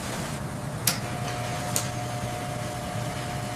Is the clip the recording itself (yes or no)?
yes